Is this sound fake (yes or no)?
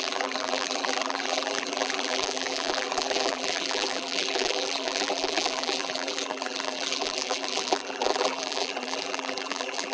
yes